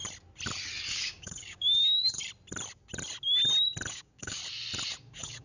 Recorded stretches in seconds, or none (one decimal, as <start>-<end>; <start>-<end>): 0.0-0.9; 2.2-3.9; 4.4-5.0